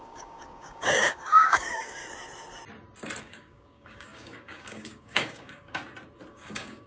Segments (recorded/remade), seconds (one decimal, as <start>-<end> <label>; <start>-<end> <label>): 0.0-2.0 remade; 2.0-3.2 recorded; 3.2-5.8 remade; 5.8-6.3 recorded; 6.3-6.9 remade